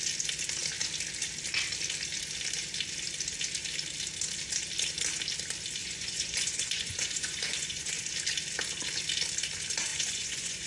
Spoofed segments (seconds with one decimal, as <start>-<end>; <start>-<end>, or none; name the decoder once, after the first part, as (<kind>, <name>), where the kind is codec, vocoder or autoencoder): 5.8-8.0 (vocoder, Vocos); 9.9-10.7